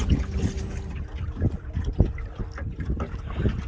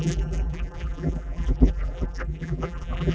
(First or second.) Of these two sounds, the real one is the first